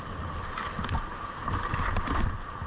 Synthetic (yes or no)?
no